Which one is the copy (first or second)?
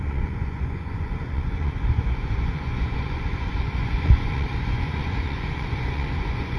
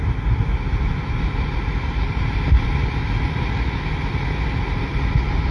first